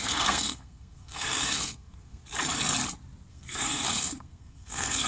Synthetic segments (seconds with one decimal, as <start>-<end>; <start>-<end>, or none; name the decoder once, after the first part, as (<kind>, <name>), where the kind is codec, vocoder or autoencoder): 0.0-2.2 (codec, SNAC); 3.3-5.1